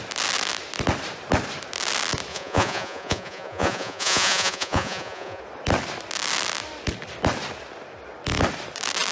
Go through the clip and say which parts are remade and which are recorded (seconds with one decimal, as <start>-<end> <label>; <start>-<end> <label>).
0.0-2.3 recorded; 2.3-5.4 remade; 5.4-9.1 recorded